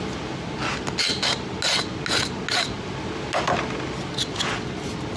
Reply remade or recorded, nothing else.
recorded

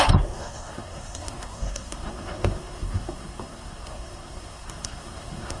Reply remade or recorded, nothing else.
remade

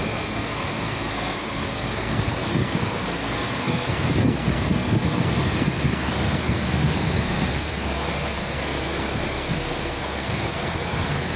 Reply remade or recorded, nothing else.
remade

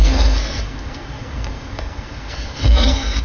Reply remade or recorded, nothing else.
remade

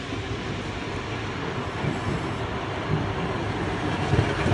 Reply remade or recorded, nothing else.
recorded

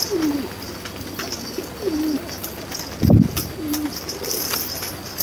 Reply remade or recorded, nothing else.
recorded